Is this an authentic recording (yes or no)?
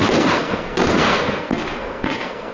no